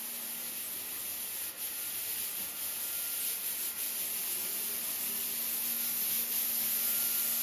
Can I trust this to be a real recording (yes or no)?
yes